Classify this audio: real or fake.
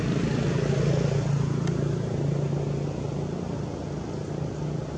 real